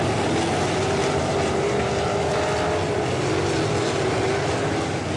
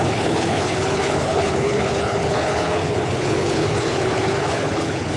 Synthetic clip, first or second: second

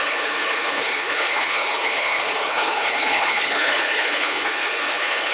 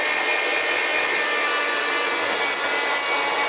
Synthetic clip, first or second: first